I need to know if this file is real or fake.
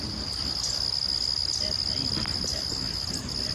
real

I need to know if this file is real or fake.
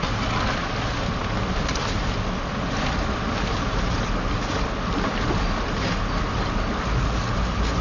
real